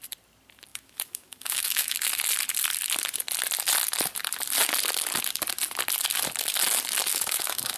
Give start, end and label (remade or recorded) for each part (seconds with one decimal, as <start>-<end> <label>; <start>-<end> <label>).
0.0-0.7 recorded; 0.7-2.1 remade; 2.1-7.1 recorded; 7.1-7.8 remade